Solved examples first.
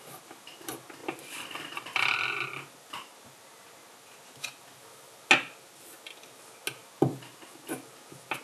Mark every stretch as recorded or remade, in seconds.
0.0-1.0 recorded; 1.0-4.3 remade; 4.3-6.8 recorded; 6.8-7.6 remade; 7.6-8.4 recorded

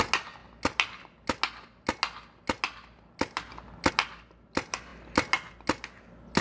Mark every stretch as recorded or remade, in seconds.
0.0-6.4 recorded

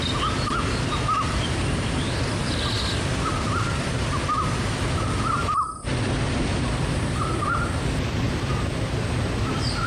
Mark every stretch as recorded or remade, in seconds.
0.0-9.9 recorded

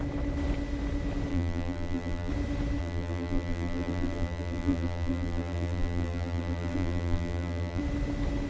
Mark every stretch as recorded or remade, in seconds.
0.0-1.3 recorded; 1.3-2.3 remade; 2.3-2.8 recorded; 2.8-7.8 remade; 7.8-8.5 recorded

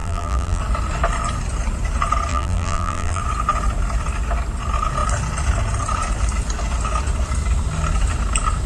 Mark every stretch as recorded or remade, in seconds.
0.0-0.6 remade; 0.6-2.3 recorded; 2.3-3.2 remade; 3.2-8.7 recorded